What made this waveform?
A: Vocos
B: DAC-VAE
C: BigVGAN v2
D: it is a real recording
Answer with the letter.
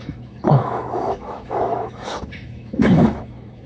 B